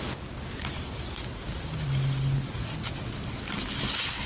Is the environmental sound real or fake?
real